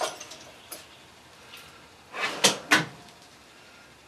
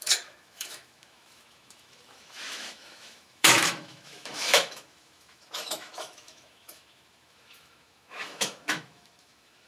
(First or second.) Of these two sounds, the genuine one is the first